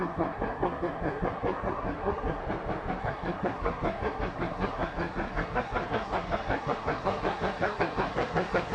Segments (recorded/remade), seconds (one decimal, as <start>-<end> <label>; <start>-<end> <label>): 0.0-2.4 remade; 2.4-3.0 recorded; 3.0-8.7 remade